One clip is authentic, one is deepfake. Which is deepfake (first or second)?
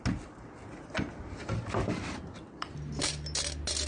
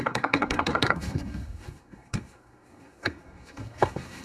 second